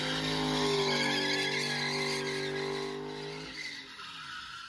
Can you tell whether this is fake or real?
real